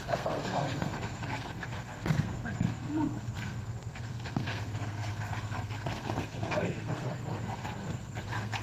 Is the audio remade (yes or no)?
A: yes